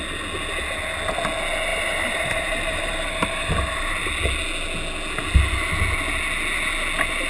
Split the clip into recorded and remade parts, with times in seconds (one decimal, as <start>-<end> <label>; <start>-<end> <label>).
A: 0.0-1.7 recorded; 1.7-4.1 remade; 4.1-7.3 recorded